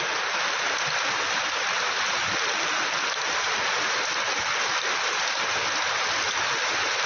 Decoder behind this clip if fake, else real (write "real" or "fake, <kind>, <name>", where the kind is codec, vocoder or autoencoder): real